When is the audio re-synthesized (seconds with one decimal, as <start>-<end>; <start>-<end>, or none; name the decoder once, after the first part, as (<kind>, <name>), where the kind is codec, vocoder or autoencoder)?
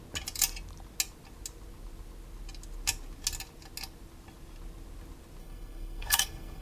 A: 5.4-6.6 (codec, SNAC)